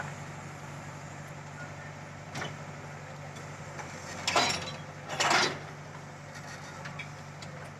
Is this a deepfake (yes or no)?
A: no